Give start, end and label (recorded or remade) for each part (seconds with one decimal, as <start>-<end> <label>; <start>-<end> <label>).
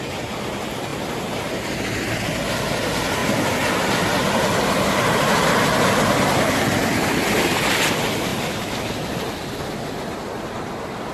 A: 0.0-11.1 recorded